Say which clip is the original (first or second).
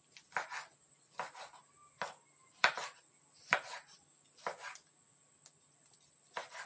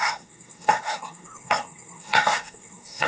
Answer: first